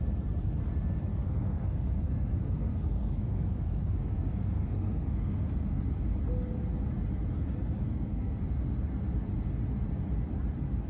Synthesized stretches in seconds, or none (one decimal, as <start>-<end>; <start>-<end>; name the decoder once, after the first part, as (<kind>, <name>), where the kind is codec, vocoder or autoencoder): 1.1-5.5 (codec, SNAC); 7.8-8.4